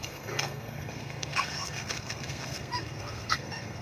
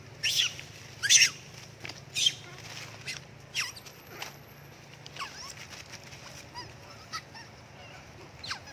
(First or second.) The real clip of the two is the second